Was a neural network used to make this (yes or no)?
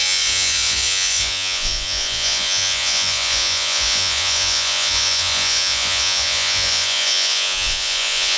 yes